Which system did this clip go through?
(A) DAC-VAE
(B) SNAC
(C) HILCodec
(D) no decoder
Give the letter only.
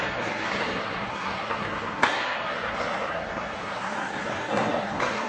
B